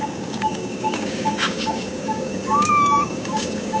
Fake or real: fake